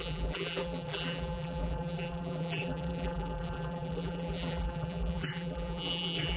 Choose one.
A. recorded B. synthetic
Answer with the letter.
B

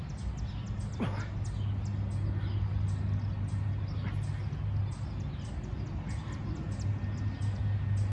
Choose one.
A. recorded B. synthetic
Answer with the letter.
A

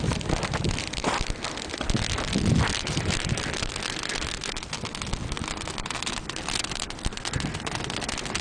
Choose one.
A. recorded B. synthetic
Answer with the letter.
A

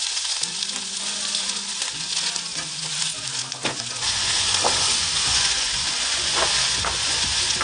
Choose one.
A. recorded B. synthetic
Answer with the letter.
B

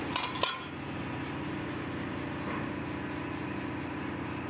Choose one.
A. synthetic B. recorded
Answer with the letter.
B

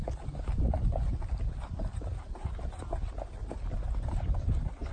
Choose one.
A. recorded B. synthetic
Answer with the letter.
A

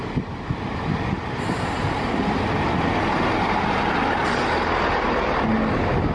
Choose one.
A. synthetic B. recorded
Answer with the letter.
B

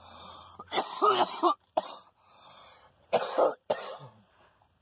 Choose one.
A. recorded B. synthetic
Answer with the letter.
B